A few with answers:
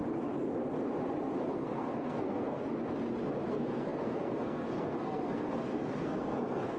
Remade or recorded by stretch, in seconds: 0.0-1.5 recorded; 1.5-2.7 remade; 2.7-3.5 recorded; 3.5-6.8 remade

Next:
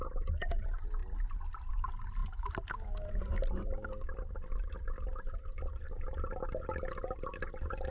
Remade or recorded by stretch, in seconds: 0.0-7.9 recorded

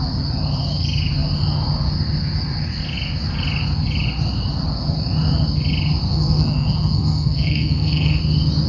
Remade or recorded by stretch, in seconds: 0.0-6.1 recorded; 6.1-8.2 remade; 8.2-8.7 recorded

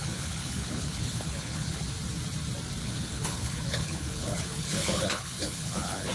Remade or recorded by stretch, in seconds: 0.0-1.8 remade; 1.8-2.8 recorded; 2.8-6.1 remade

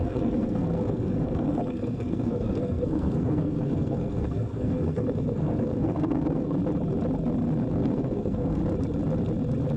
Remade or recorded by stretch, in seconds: 0.0-6.6 remade; 6.6-7.7 recorded; 7.7-8.6 remade; 8.6-9.8 recorded

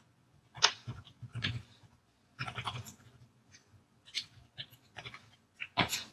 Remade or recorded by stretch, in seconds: 0.0-6.1 remade

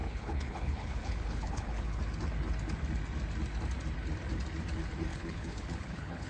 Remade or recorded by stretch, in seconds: 0.0-2.0 remade; 2.0-5.1 recorded; 5.1-6.3 remade

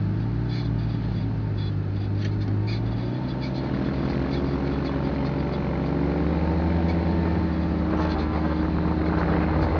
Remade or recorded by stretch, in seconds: 0.0-8.0 recorded; 8.0-8.6 remade; 8.6-9.8 recorded